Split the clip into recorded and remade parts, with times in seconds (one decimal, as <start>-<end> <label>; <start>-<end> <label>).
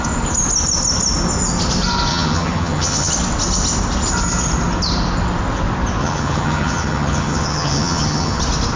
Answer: 0.0-2.1 recorded; 2.1-3.1 remade; 3.1-6.0 recorded; 6.0-8.4 remade; 8.4-8.8 recorded